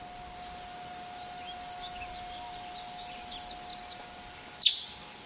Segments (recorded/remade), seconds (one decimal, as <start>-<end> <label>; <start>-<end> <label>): 0.0-5.3 recorded